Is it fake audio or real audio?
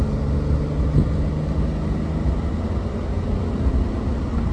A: real